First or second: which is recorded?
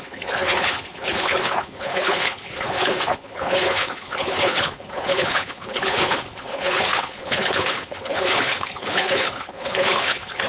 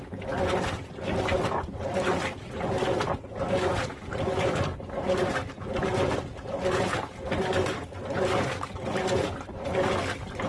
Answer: second